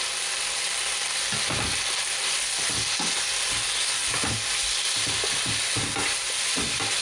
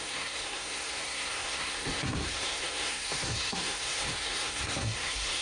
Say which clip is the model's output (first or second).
second